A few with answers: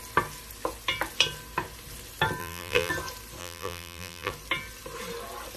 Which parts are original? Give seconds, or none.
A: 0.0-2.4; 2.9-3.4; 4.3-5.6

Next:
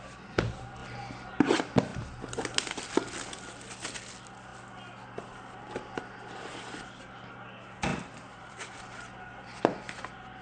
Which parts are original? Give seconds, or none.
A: 0.0-7.9; 8.8-10.4

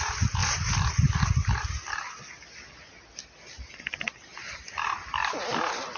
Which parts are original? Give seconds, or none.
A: 0.0-6.0

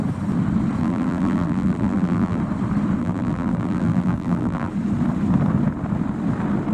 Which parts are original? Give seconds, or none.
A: 0.0-0.8; 2.4-3.0; 4.7-6.7

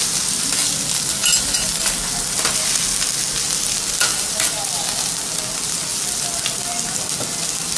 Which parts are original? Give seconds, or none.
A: 0.0-4.1; 4.6-7.8